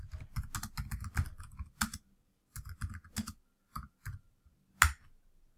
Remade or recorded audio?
recorded